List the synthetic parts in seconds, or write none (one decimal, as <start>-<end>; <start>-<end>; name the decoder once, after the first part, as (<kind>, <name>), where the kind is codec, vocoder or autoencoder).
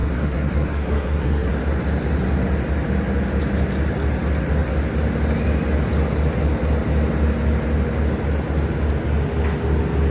0.0-1.5 (codec, SNAC)